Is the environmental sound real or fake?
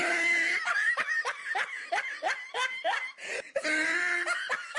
real